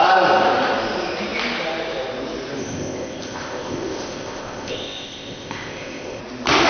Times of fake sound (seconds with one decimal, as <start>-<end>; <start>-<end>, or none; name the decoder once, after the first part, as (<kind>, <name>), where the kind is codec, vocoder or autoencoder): 2.6-6.2 (codec, ZipCodec)